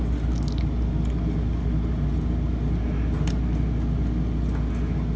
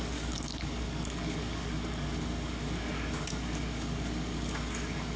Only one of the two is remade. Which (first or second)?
second